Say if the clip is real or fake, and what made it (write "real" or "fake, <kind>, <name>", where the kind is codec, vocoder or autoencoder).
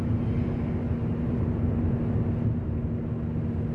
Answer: real